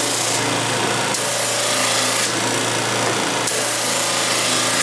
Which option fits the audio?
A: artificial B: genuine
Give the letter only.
B